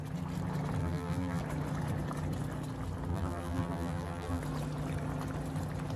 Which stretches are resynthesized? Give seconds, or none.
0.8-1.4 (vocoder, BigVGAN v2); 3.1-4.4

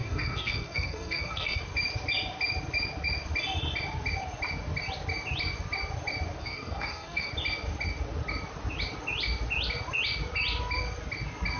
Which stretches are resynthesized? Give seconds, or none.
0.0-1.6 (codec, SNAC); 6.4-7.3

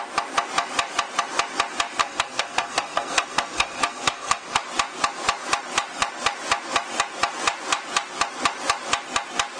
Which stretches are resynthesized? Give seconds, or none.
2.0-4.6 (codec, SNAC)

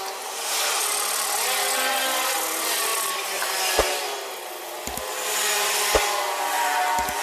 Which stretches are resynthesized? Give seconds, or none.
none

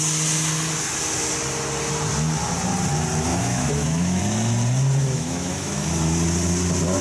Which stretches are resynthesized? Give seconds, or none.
3.3-4.2 (autoencoder, DAC-VAE); 5.0-5.9

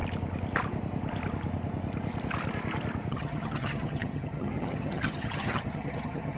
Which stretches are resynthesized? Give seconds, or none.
3.1-6.4 (vocoder, HiFi-GAN)

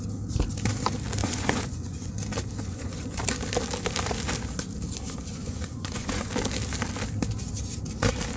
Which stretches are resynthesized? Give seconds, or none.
1.2-2.1 (vocoder, Vocos); 2.7-3.2; 5.3-6.3